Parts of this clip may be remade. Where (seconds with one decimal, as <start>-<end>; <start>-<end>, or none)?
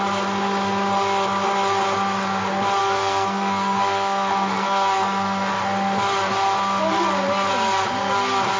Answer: 2.8-5.5